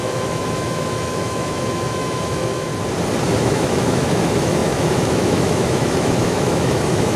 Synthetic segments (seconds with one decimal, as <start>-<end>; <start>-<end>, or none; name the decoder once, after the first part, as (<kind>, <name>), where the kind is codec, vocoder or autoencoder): 0.0-2.7 (autoencoder, DAC-VAE); 3.4-7.2